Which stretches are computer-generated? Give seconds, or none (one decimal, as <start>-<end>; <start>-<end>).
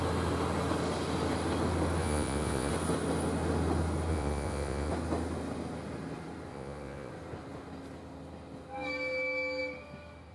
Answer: 2.0-2.7; 4.1-4.9; 6.5-7.1